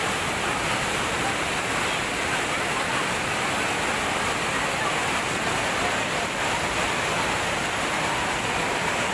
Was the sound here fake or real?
real